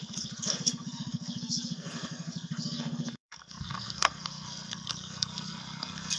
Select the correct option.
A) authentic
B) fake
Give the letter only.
B